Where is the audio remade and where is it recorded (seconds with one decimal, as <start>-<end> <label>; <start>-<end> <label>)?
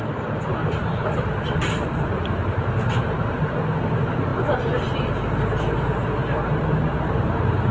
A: 0.0-0.6 recorded; 0.6-3.4 remade; 3.4-7.7 recorded